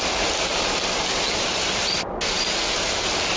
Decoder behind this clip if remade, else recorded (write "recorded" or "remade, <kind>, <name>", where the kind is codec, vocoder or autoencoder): recorded